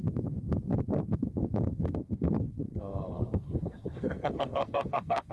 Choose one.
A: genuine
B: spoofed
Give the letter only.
B